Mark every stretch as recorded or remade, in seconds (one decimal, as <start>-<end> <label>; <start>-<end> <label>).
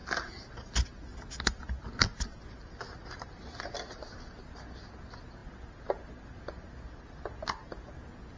0.0-8.4 recorded